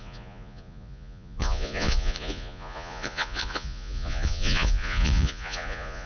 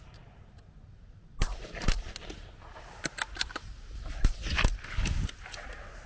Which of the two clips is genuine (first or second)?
second